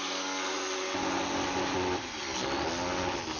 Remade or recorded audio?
recorded